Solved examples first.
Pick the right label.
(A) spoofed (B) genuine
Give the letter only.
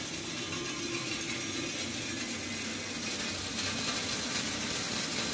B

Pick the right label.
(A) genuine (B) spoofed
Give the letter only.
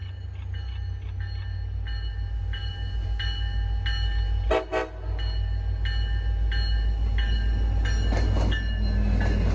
A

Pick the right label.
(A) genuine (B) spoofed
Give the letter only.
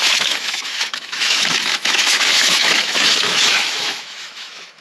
B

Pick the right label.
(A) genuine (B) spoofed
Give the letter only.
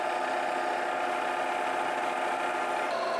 A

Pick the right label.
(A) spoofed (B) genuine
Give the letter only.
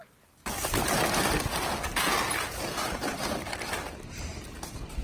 B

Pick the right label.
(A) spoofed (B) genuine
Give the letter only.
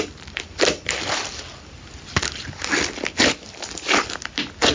B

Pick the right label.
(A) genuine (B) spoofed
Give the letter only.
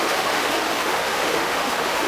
B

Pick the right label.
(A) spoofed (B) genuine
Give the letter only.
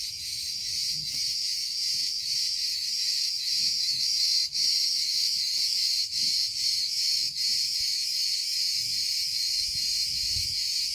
A